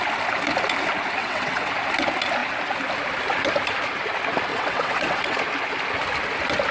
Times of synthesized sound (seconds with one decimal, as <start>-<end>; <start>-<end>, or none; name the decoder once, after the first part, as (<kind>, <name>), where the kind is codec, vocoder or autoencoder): 1.2-1.7 (vocoder, WaveNeXt); 4.5-5.4